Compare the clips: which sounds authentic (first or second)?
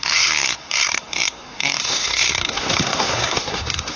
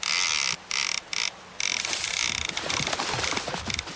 second